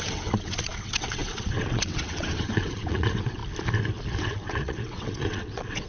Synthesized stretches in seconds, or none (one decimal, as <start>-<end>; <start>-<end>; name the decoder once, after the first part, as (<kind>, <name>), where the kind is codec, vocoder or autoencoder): 0.0-3.4 (vocoder, WaveNeXt); 4.2-5.9